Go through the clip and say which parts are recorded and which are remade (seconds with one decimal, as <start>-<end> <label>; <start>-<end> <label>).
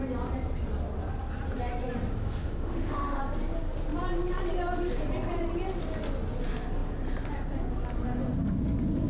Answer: 0.0-2.2 recorded; 2.2-3.2 remade; 3.2-9.1 recorded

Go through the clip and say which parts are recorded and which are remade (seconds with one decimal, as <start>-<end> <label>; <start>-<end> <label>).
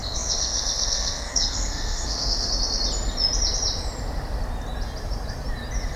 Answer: 0.0-2.5 remade; 2.5-6.0 recorded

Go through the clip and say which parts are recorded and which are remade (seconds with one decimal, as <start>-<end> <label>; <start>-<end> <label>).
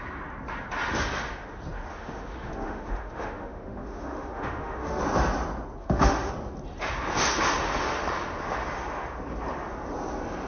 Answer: 0.0-1.9 recorded; 1.9-5.0 remade; 5.0-5.8 recorded; 5.8-6.3 remade; 6.3-10.5 recorded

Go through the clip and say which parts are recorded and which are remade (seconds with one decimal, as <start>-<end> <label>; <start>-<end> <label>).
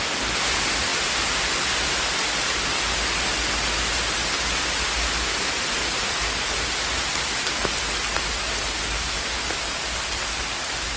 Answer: 0.0-11.0 recorded